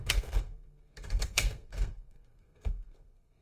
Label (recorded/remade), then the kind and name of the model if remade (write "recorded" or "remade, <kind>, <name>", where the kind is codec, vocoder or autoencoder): remade, codec, SNAC